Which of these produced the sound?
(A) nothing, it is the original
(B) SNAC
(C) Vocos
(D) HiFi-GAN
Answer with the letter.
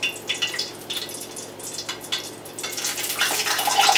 A